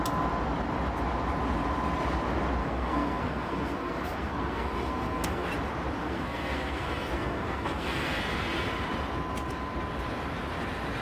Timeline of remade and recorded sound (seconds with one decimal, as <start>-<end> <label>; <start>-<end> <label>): 0.0-2.6 recorded; 2.6-5.5 remade; 5.5-6.0 recorded; 6.0-8.2 remade; 8.2-11.0 recorded